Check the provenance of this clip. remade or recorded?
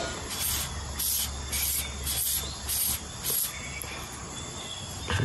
recorded